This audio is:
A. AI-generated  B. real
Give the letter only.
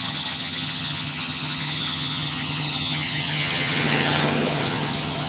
A